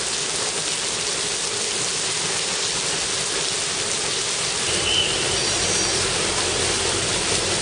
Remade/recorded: recorded